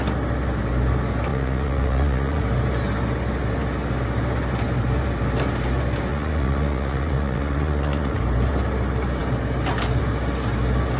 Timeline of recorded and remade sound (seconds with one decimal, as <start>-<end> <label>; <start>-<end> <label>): 0.0-1.3 recorded; 1.3-2.4 remade; 2.4-6.1 recorded; 6.1-8.2 remade; 8.2-11.0 recorded